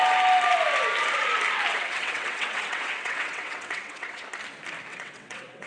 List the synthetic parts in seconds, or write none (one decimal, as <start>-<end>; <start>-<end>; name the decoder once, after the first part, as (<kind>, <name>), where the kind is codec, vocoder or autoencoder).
1.7-4.2 (vocoder, WaveNeXt); 4.9-5.7